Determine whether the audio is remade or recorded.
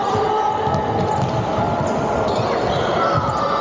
recorded